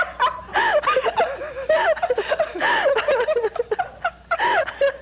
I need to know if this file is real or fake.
real